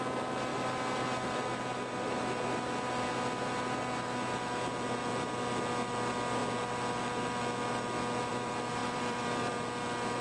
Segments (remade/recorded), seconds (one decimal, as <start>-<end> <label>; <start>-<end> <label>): 0.0-8.8 recorded; 8.8-9.5 remade; 9.5-10.2 recorded